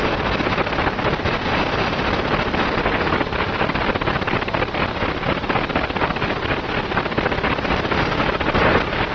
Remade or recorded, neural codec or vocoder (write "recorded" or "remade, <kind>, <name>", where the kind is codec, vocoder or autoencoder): remade, vocoder, BigVGAN v2